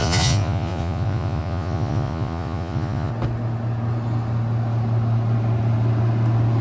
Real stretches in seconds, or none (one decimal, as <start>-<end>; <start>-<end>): 3.1-6.6